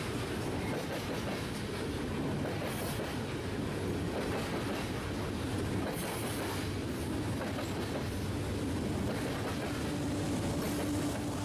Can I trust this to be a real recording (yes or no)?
yes